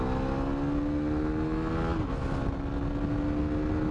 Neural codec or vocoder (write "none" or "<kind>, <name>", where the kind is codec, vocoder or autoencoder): none